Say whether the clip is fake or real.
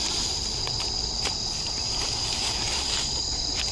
real